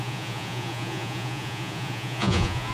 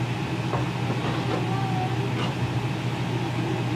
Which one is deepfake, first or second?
first